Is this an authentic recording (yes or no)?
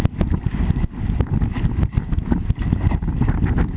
yes